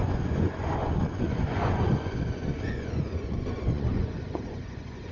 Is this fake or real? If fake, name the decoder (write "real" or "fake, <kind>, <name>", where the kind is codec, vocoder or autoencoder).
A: fake, vocoder, Vocos